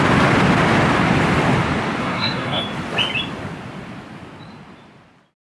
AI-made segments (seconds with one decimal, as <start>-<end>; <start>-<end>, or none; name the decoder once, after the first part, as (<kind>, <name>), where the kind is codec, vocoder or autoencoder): 2.0-2.6 (codec, SNAC)